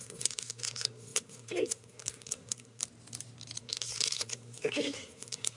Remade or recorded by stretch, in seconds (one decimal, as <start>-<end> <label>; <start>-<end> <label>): 0.0-2.8 remade; 2.8-3.6 recorded; 3.6-5.6 remade